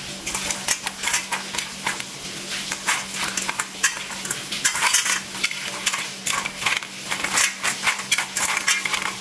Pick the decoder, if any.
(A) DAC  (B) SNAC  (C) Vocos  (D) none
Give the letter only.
D